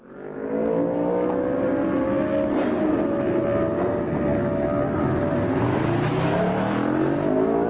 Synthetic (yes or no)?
no